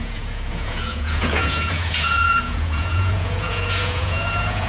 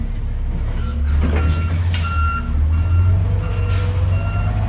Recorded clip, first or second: second